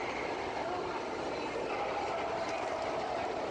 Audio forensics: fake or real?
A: real